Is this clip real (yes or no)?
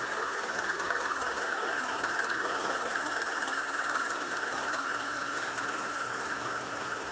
no